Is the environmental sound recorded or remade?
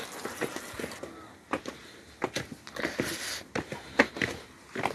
recorded